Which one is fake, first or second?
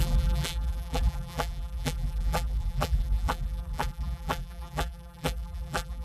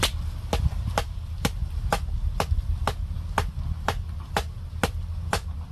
first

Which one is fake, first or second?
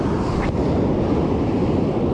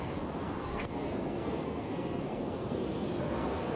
second